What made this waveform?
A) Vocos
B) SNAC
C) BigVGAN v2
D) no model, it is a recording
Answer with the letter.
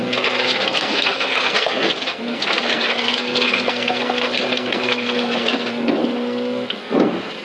B